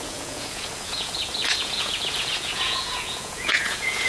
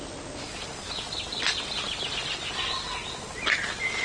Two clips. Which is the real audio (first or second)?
second